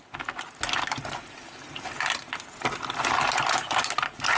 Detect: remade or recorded recorded